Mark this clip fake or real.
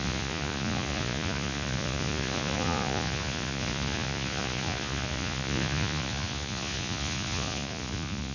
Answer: fake